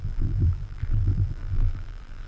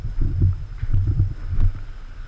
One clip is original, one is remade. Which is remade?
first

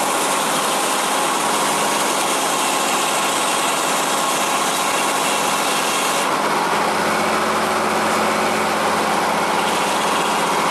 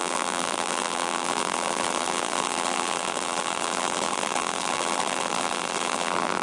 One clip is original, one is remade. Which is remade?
second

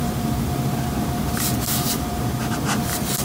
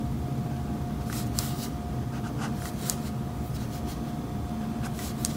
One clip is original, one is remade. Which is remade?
first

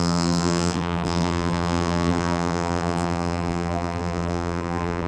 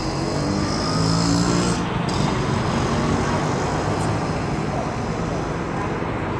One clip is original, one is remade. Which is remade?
first